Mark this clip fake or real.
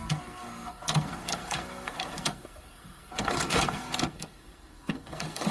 fake